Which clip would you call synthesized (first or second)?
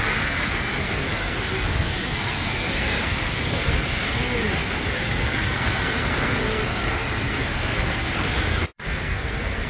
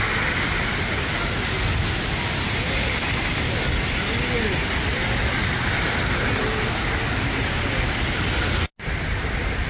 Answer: first